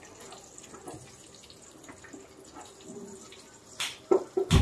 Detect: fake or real real